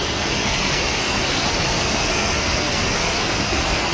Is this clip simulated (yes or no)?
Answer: yes